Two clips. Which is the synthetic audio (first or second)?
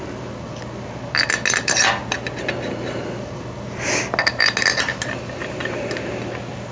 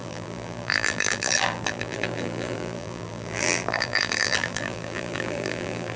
second